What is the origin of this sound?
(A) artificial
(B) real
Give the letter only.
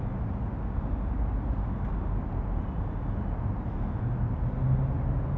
B